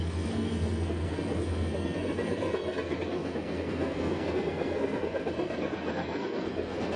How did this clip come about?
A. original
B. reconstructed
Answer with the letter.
B